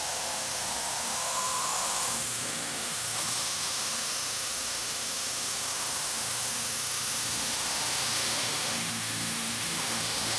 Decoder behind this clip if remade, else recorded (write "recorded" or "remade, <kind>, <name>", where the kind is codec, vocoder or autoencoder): remade, autoencoder, DAC-VAE